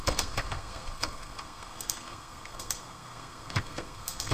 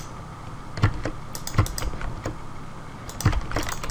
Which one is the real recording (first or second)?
second